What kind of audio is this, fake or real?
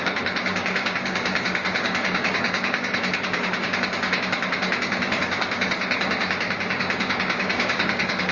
fake